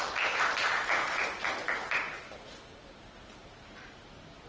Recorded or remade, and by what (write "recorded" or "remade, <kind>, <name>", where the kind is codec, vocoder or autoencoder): recorded